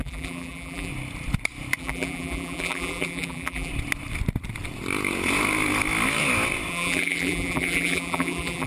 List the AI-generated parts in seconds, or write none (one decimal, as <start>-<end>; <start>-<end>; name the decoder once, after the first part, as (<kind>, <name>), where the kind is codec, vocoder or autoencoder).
0.0-0.9 (vocoder, BigVGAN v2); 1.8-3.7; 6.7-8.7